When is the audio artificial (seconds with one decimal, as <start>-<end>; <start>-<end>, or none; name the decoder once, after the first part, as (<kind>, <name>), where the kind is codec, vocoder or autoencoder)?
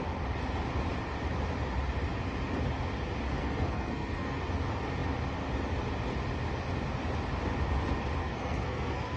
3.4-4.4 (codec, SNAC); 8.2-9.2